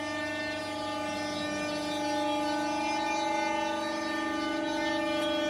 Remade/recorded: recorded